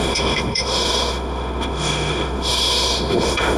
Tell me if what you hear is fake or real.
fake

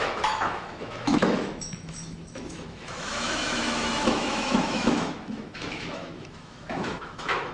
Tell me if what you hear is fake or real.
fake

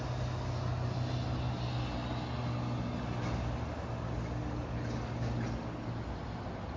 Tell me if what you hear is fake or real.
real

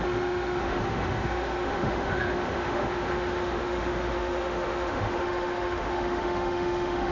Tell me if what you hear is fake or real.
fake